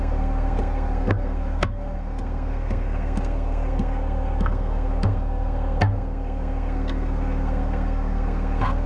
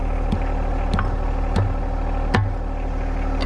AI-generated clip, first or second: first